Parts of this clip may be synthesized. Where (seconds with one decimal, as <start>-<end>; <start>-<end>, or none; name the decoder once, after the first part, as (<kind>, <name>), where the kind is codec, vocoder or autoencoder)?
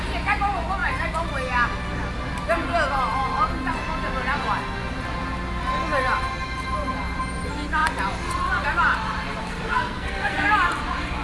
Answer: 9.4-10.5 (codec, SNAC)